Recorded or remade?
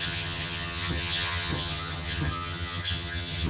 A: remade